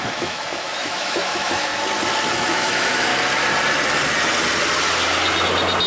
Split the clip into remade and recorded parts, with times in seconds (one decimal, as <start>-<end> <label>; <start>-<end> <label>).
0.0-1.7 remade; 1.7-2.3 recorded; 2.3-3.1 remade; 3.1-5.9 recorded